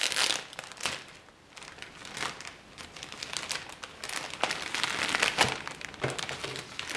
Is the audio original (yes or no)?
yes